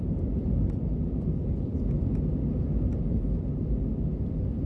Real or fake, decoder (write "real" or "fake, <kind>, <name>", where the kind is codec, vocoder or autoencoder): real